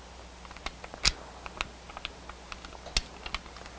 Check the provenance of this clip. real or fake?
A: real